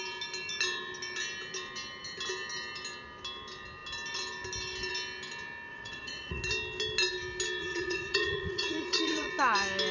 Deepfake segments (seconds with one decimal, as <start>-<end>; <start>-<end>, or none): 5.7-6.4; 7.6-9.3